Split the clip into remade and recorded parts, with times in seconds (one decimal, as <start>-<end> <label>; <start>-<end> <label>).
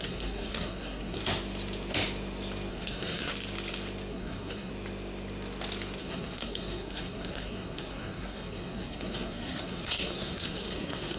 0.0-1.2 remade; 1.2-2.7 recorded; 2.7-3.3 remade; 3.3-4.1 recorded; 4.1-4.7 remade; 4.7-6.0 recorded; 6.0-11.2 remade